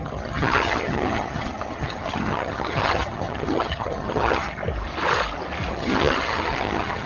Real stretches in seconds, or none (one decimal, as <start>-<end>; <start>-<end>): 4.6-5.7